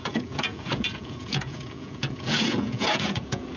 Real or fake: fake